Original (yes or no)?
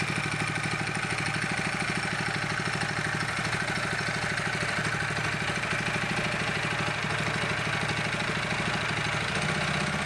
yes